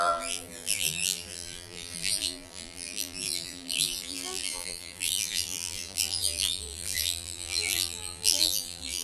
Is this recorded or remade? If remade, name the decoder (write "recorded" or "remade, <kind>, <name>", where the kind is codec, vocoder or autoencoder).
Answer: remade, vocoder, BigVGAN v2